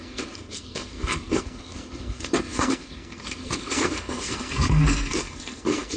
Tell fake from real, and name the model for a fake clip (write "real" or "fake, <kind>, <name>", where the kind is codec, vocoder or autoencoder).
fake, codec, SNAC